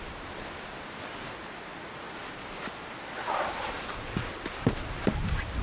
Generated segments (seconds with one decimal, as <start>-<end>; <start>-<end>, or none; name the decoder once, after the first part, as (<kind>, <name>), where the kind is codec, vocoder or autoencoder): 0.0-5.6 (vocoder, BigVGAN v2)